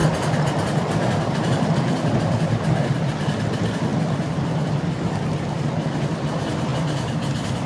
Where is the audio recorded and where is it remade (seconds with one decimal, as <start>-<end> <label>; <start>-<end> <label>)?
0.0-7.7 recorded